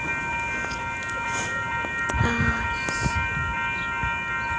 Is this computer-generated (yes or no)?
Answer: no